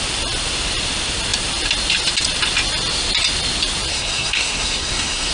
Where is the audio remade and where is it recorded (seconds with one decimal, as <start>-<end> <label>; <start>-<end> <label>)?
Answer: 0.0-3.9 recorded; 3.9-5.3 remade